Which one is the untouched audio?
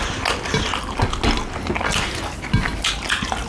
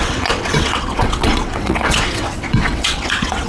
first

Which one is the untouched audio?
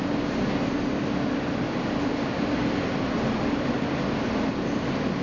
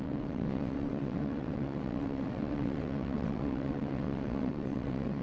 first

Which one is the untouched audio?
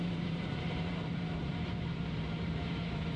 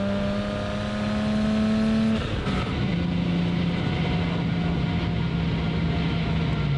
second